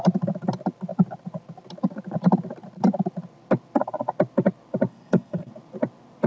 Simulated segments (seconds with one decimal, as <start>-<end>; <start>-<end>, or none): 4.9-5.5

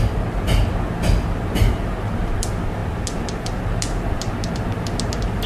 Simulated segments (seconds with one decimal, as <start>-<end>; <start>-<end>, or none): none